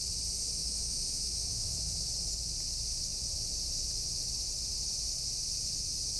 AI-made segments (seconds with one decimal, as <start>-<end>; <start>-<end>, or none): 0.6-2.1